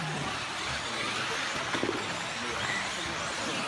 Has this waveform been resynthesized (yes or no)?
no